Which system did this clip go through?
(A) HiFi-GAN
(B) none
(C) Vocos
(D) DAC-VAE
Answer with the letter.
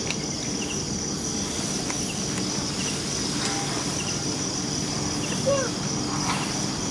B